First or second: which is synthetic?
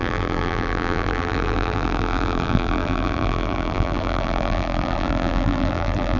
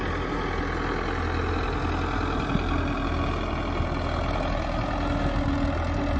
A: first